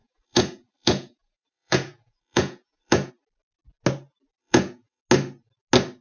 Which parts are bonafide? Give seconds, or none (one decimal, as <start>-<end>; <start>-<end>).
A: 3.1-4.4; 5.0-6.0